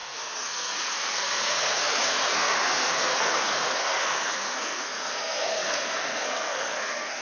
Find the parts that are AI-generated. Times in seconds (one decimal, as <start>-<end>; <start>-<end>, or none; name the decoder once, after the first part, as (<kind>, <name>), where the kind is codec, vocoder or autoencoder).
0.0-7.2 (codec, SNAC)